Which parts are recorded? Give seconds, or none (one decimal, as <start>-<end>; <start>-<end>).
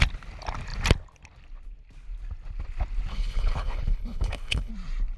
0.0-3.1; 4.7-5.2